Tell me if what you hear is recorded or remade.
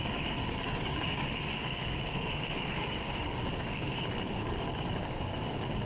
remade